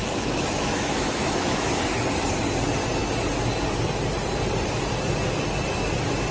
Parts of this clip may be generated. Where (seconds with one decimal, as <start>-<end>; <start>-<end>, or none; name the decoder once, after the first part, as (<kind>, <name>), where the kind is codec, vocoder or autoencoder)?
0.0-1.8 (autoencoder, DAC-VAE)